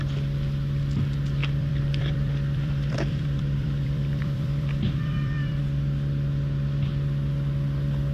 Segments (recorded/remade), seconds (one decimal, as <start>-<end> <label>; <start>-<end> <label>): 0.0-1.4 recorded; 1.4-5.6 remade; 5.6-8.1 recorded